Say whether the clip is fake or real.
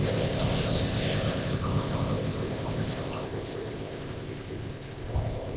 fake